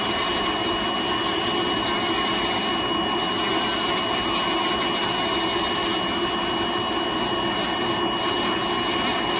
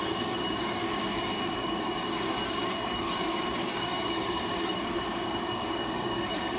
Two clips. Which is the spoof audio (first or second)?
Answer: second